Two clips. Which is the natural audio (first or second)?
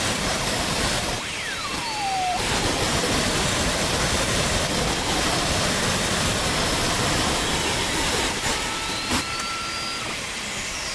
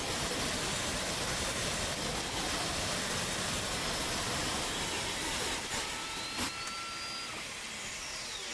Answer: second